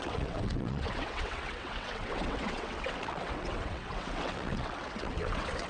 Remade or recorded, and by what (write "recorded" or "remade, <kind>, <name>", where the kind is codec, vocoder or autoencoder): remade, vocoder, WaveNeXt